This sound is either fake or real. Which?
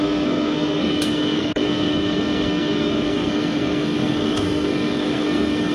fake